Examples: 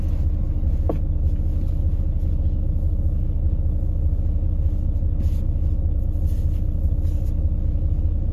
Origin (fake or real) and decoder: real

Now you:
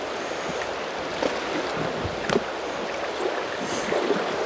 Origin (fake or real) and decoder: real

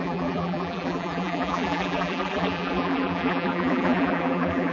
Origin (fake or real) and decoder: fake, vocoder, BigVGAN v2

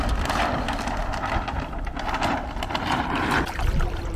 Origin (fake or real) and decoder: real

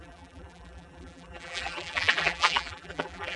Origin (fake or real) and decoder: fake, vocoder, BigVGAN v2